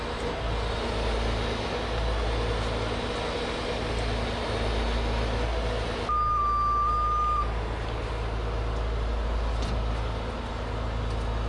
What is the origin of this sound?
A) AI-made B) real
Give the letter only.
B